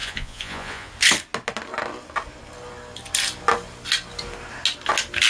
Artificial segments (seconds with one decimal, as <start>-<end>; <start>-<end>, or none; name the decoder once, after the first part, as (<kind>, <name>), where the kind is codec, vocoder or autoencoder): 0.0-0.9 (vocoder, Vocos)